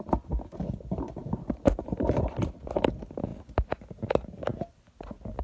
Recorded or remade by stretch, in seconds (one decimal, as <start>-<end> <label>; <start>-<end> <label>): 0.0-5.4 recorded